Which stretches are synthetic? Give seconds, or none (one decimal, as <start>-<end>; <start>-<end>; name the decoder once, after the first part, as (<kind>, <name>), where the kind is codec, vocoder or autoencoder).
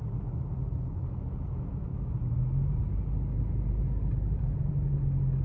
1.9-2.8 (autoencoder, DAC-VAE)